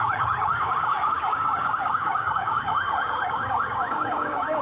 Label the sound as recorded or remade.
remade